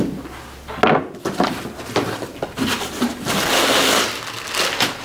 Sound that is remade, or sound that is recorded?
recorded